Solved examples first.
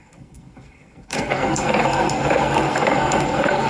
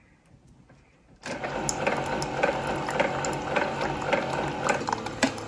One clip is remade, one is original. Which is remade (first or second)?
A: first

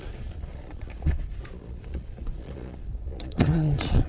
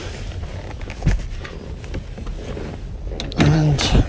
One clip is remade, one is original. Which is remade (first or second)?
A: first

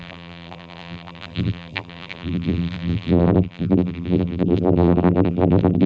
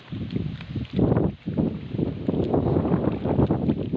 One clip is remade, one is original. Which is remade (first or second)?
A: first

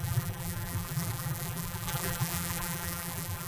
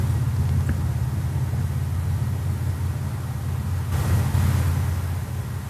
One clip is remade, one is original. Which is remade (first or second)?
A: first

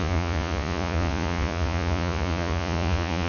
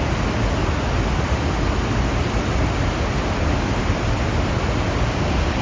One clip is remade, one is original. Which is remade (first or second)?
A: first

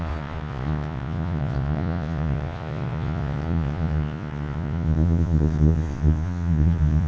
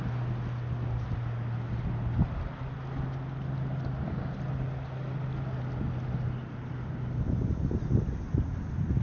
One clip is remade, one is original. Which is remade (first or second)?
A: first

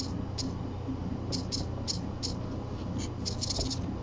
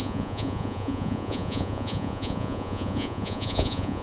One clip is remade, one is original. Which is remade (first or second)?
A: second